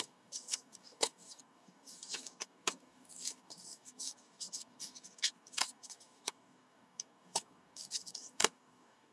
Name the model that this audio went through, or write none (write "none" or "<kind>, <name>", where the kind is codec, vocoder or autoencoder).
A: codec, DAC